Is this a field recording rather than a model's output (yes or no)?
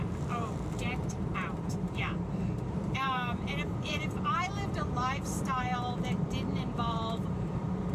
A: no